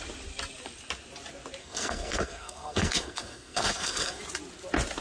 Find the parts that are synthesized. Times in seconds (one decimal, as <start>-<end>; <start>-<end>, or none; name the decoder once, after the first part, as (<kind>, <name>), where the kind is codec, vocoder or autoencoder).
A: 1.6-4.2 (codec, SNAC)